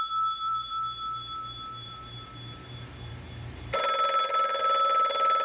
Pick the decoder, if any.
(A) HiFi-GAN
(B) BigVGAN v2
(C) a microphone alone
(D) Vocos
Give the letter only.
B